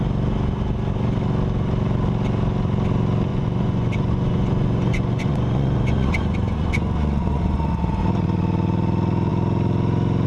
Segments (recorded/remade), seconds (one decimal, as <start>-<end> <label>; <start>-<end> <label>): 0.0-3.3 recorded; 3.3-8.0 remade; 8.0-10.3 recorded